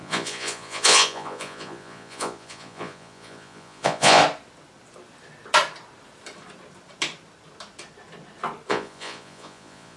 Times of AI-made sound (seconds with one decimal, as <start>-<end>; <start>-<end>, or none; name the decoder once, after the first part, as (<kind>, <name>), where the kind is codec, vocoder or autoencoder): 0.0-4.2 (vocoder, Vocos); 8.7-10.0